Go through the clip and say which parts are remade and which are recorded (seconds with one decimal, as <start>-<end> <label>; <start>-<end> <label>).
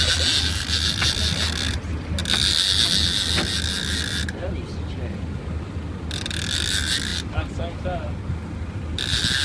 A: 0.0-9.4 recorded